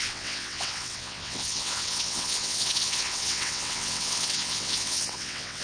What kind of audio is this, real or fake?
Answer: fake